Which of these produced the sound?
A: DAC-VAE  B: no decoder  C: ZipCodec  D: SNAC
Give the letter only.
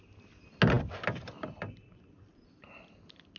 B